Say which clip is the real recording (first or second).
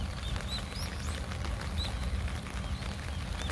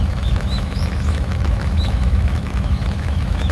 first